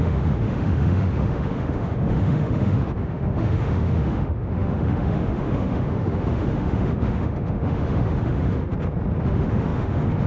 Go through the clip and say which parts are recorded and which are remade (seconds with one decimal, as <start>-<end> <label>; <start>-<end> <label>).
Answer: 0.0-8.7 remade; 8.7-9.2 recorded; 9.2-10.3 remade